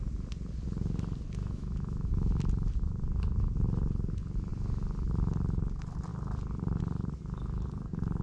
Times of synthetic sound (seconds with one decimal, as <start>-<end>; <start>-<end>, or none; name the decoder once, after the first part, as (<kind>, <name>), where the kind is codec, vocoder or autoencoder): 1.4-2.3 (autoencoder, DAC-VAE)